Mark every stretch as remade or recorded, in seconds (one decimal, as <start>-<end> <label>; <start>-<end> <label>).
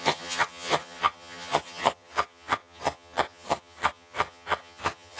0.0-5.2 remade